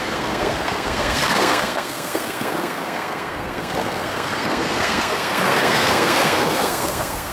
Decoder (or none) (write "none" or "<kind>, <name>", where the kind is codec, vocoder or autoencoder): codec, SNAC